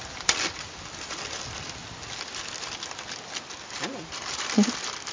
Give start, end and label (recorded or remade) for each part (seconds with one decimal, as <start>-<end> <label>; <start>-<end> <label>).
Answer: 0.0-1.8 remade; 1.8-3.4 recorded; 3.4-5.1 remade